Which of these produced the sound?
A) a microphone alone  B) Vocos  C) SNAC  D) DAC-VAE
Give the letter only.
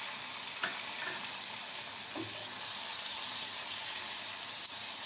A